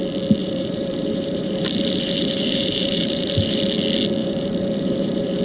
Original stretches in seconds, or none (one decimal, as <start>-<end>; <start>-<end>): 0.0-0.4; 3.6-4.2